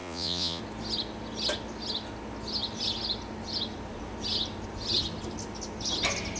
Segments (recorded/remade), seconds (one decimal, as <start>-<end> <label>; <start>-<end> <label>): 0.0-0.6 remade; 0.6-6.4 recorded

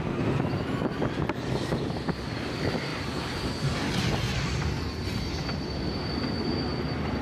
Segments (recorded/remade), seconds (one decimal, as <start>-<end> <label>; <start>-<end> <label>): 0.0-7.2 recorded

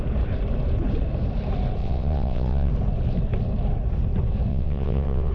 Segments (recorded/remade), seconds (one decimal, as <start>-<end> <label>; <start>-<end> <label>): 0.0-1.8 recorded; 1.8-2.7 remade; 2.7-4.5 recorded; 4.5-5.3 remade